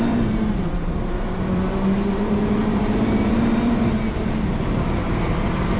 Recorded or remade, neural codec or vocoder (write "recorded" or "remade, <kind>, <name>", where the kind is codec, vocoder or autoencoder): remade, vocoder, BigVGAN v2